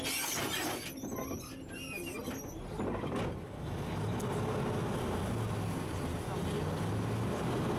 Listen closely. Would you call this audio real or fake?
real